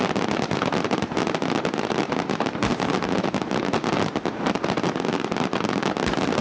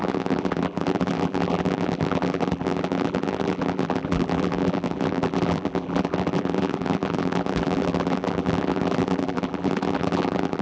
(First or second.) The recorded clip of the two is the first